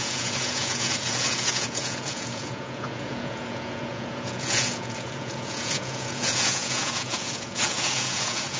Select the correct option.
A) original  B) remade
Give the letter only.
B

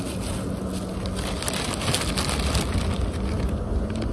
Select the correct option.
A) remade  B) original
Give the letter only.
B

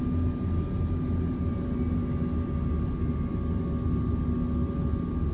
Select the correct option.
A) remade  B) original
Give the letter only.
B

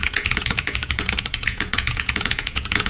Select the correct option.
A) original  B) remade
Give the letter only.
B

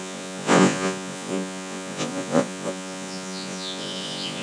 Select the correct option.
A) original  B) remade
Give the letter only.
B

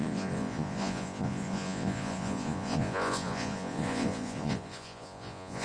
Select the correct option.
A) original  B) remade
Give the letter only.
B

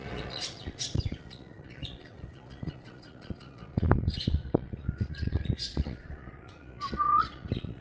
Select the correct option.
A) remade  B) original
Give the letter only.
A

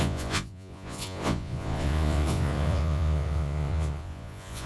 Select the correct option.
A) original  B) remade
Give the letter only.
B